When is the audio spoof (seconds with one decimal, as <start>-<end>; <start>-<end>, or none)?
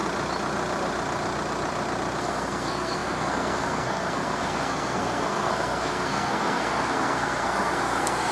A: 2.2-8.3